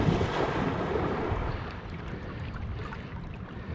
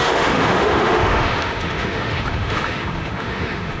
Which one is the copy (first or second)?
second